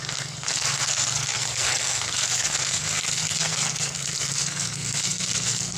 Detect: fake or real fake